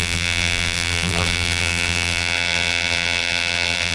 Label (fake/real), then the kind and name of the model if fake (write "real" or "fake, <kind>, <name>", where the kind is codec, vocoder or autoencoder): fake, vocoder, BigVGAN v2